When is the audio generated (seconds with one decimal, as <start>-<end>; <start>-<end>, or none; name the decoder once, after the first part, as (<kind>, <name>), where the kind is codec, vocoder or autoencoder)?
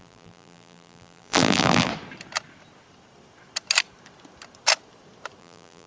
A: 0.0-1.9 (vocoder, BigVGAN v2); 5.4-5.9